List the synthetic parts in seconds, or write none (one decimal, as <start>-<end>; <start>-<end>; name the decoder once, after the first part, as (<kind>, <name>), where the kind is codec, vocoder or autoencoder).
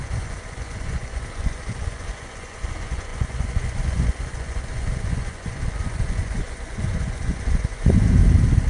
0.0-8.2 (vocoder, Vocos)